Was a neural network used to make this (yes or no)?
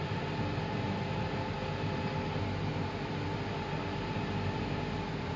no